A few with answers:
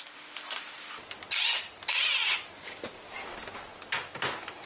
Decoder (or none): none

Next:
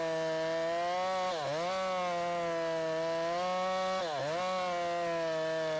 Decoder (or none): none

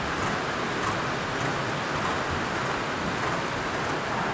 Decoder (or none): none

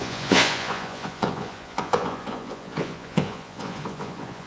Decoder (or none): vocoder, Vocos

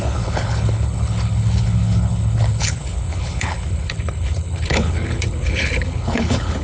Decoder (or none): codec, HILCodec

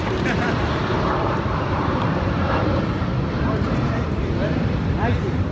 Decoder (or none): vocoder, BigVGAN v2